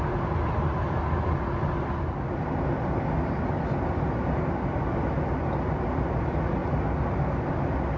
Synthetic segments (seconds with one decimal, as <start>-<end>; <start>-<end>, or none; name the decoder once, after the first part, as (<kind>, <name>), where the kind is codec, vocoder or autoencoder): none